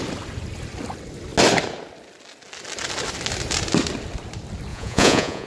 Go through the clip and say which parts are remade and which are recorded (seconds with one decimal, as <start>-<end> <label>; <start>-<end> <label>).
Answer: 0.0-4.7 recorded; 4.7-5.5 remade

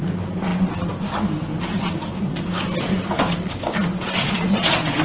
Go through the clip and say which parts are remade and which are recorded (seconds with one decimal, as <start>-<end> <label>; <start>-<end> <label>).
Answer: 0.0-4.2 recorded; 4.2-5.0 remade

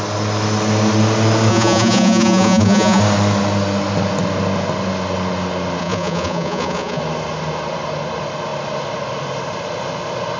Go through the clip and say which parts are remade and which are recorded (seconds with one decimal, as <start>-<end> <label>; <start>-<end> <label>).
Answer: 0.0-1.5 recorded; 1.5-3.0 remade; 3.0-5.8 recorded; 5.8-7.0 remade; 7.0-10.4 recorded

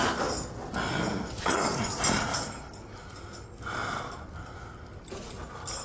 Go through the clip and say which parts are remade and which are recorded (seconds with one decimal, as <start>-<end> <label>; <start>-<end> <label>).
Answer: 0.0-5.8 recorded

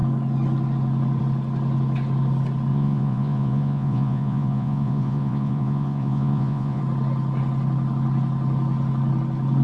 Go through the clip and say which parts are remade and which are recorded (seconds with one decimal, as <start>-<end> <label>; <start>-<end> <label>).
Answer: 0.0-2.7 recorded; 2.7-6.8 remade; 6.8-9.6 recorded

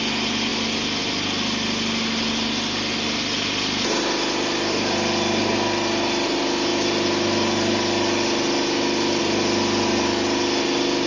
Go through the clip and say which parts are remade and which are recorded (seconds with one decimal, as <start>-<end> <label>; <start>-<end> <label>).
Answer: 0.0-11.1 recorded

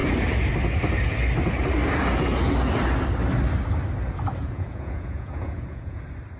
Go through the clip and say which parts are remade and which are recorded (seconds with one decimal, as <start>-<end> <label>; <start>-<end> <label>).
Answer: 0.0-4.4 recorded; 4.4-6.0 remade; 6.0-6.4 recorded

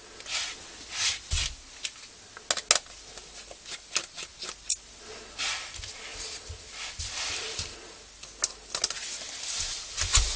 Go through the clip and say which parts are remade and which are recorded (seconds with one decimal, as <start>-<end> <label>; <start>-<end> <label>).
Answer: 0.0-10.4 recorded